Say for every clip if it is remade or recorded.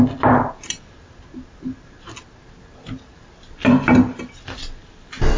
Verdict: recorded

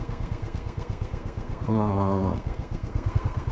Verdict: remade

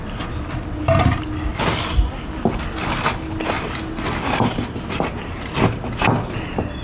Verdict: recorded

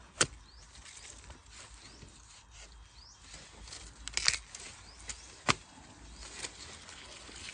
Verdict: recorded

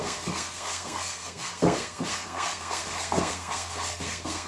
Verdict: remade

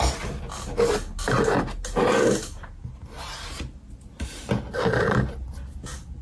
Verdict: recorded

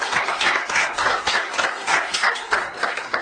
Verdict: remade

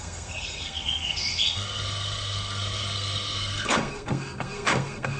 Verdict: remade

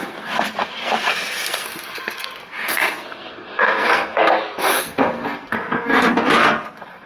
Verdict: remade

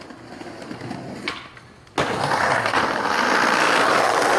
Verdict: recorded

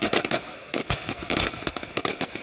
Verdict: remade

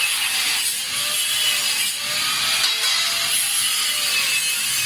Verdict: recorded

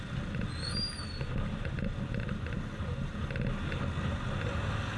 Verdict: recorded